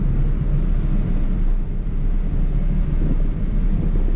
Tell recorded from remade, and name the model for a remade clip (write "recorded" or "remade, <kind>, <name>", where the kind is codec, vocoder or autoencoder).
recorded